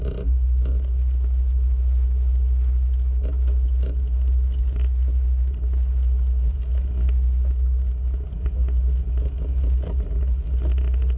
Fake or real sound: real